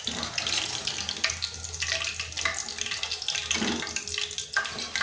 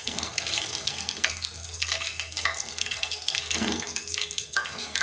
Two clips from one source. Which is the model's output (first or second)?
second